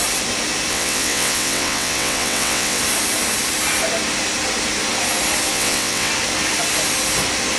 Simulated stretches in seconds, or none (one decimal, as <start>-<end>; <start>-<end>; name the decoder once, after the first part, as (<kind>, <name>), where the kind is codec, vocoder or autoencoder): 0.7-2.8 (vocoder, WaveNeXt); 5.5-6.1